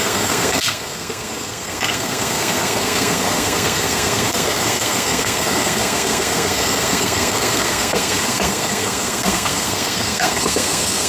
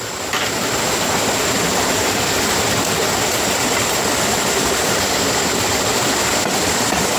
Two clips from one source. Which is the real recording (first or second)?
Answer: second